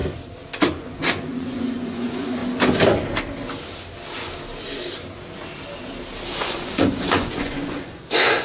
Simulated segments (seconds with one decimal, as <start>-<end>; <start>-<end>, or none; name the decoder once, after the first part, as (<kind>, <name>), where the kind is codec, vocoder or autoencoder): 0.8-2.4 (vocoder, Vocos); 6.4-8.4